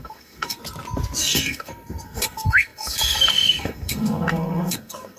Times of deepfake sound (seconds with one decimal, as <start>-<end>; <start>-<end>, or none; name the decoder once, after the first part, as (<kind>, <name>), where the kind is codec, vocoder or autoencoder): 0.0-0.6 (codec, SNAC); 1.2-5.2